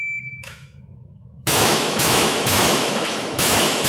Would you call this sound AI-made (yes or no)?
yes